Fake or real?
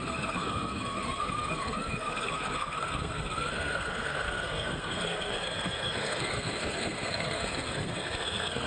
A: fake